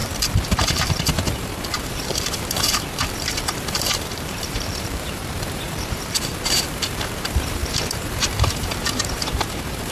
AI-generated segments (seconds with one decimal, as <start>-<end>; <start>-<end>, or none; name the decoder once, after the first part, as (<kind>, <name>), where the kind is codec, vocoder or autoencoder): 0.0-9.9 (vocoder, BigVGAN v2)